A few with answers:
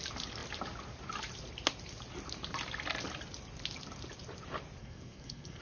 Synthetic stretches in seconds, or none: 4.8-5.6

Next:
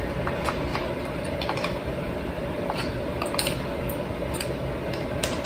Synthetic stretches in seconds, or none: 0.7-4.0

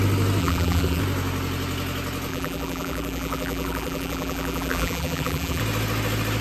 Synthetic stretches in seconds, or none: 0.4-1.0; 2.3-5.6

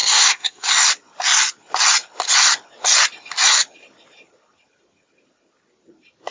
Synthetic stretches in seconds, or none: 0.0-0.7

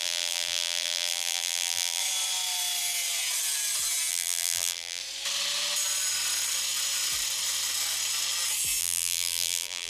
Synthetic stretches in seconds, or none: 0.0-2.0; 4.1-5.0; 8.8-9.9

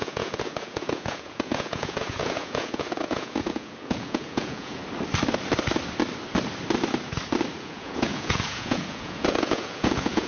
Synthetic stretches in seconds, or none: 0.0-4.8; 7.6-10.3